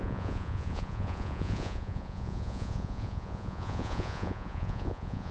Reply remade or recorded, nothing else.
remade